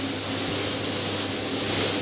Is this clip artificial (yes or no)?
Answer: no